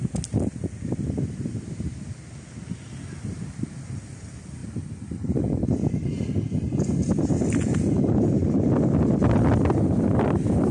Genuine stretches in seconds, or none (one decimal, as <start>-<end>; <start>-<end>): 0.0-10.7